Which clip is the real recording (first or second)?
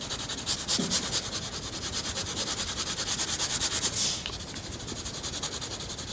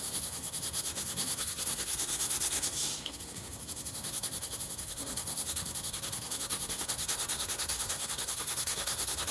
first